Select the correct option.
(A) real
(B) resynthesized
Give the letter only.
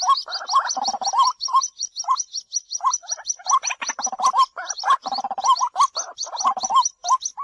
A